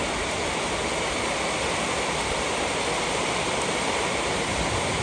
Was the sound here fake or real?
real